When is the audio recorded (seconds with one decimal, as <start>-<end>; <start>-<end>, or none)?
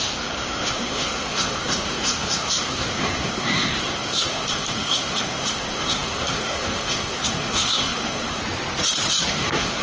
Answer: 8.4-9.3